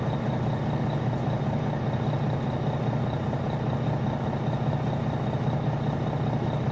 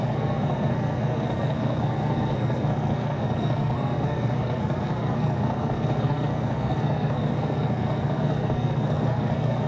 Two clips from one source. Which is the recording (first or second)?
first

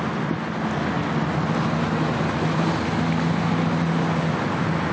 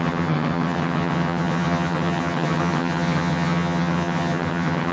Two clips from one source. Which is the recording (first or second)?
first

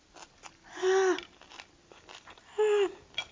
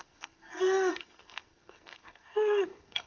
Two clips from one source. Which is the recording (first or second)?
first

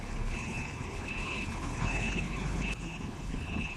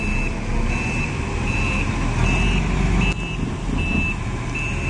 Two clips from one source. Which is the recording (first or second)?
second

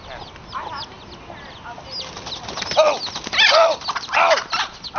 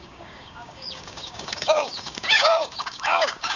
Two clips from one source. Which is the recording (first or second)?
first